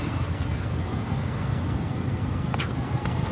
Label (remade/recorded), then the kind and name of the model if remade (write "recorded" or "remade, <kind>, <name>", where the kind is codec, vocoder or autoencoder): remade, codec, SNAC